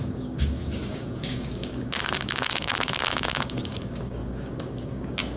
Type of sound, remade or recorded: remade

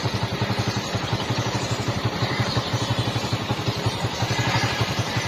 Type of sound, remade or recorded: remade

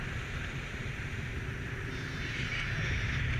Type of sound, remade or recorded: recorded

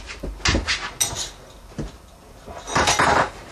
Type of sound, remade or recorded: recorded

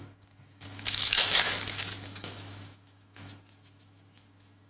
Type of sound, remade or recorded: remade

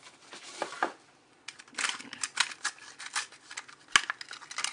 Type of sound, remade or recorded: recorded